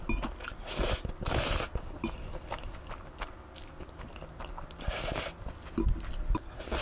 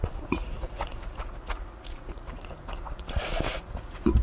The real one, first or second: first